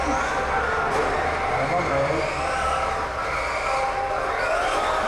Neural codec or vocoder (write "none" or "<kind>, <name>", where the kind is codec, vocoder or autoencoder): none